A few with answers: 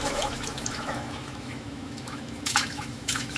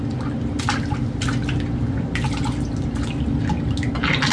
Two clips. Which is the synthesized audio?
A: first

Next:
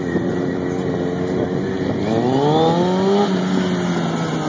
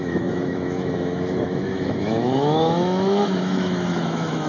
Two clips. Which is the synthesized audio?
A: second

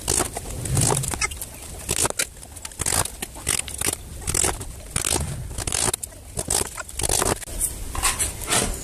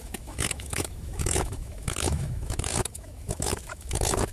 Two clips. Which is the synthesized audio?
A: second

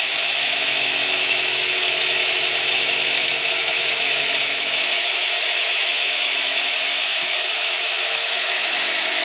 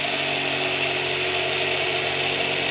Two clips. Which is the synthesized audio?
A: first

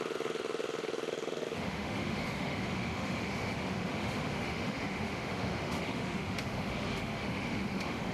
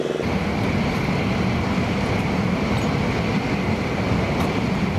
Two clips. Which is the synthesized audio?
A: first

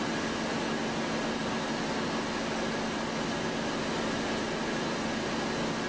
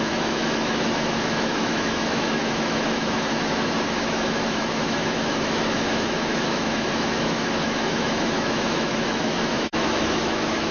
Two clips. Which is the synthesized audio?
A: second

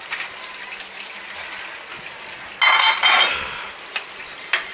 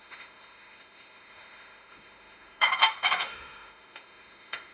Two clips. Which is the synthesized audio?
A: second